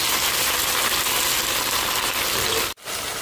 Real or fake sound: real